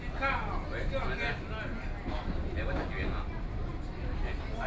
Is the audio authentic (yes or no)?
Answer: yes